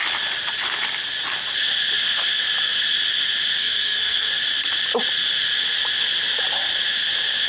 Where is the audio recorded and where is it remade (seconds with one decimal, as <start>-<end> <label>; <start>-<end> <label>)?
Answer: 0.0-3.6 recorded; 3.6-4.3 remade; 4.3-7.5 recorded